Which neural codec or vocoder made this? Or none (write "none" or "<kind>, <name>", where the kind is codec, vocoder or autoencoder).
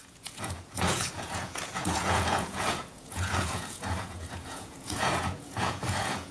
vocoder, Vocos